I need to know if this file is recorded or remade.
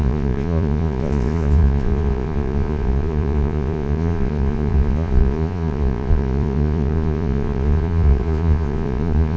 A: remade